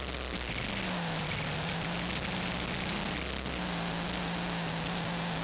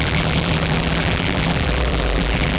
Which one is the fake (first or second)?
second